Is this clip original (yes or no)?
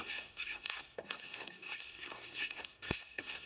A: no